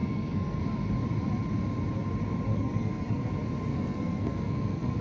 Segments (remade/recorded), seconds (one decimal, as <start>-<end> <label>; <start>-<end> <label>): 0.0-0.6 remade; 0.6-2.5 recorded; 2.5-3.3 remade; 3.3-3.7 recorded; 3.7-5.0 remade